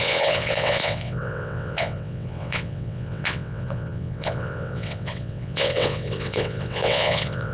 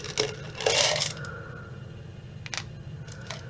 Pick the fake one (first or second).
first